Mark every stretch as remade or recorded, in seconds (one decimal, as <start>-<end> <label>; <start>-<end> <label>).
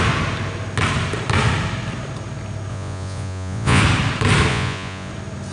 0.0-2.7 recorded; 2.7-3.8 remade; 3.8-4.5 recorded; 4.5-5.1 remade; 5.1-5.5 recorded